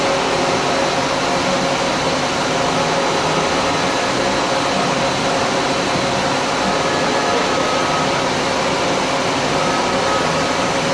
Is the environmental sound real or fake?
real